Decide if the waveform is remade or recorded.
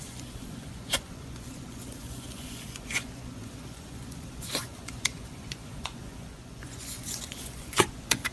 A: remade